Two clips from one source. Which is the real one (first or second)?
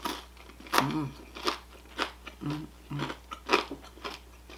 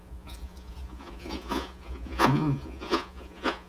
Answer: first